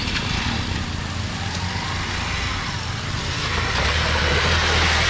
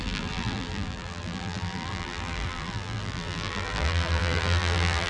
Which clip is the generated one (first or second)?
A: second